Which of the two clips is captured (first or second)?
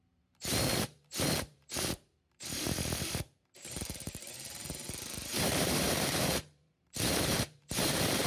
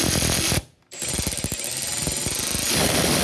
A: second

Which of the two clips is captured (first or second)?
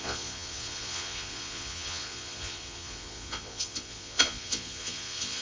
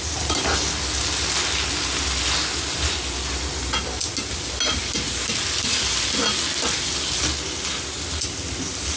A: second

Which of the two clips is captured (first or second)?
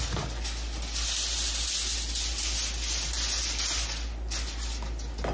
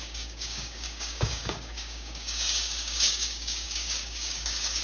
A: first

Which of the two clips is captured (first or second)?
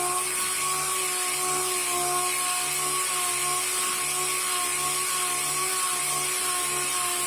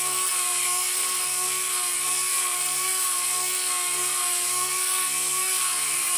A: first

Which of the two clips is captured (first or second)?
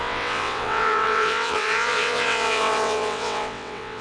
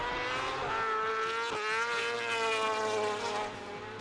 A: second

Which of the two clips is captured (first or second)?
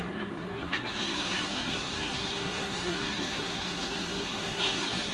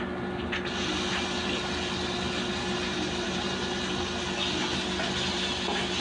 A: second